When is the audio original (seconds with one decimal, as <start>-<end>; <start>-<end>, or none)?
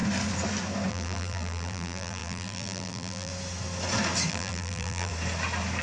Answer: 0.0-0.9; 3.3-4.3; 5.1-5.8